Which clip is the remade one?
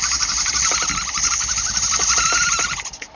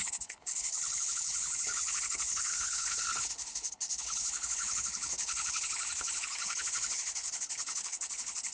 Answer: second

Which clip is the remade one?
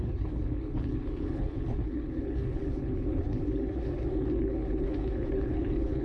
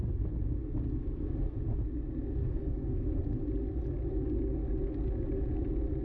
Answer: first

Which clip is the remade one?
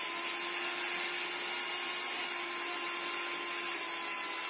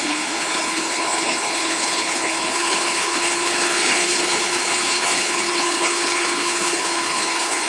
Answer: second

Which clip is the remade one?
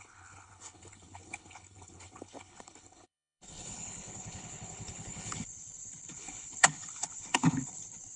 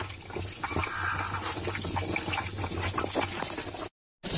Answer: first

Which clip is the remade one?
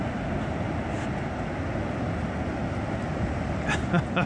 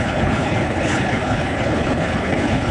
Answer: second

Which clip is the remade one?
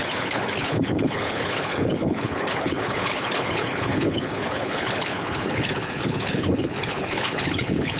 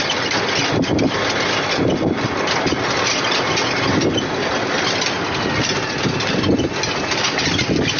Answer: first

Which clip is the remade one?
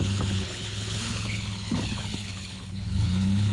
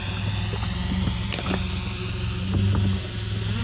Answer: first